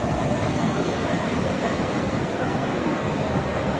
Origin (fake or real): fake